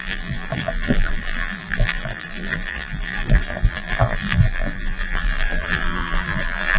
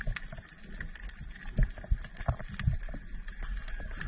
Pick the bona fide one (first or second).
second